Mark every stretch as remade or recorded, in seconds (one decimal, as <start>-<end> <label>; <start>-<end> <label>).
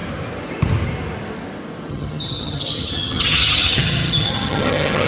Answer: 0.0-1.9 recorded; 1.9-5.1 remade